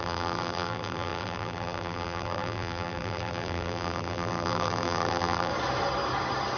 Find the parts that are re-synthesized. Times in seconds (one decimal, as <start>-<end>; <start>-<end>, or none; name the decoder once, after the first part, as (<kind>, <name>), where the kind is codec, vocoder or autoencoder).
0.0-5.5 (vocoder, BigVGAN v2)